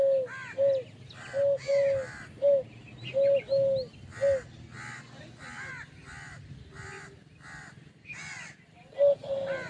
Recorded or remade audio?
recorded